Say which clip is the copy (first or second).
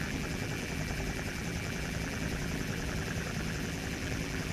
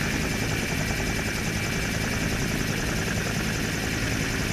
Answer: first